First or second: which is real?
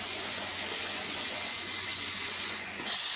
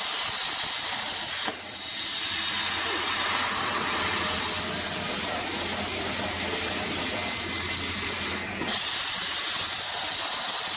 second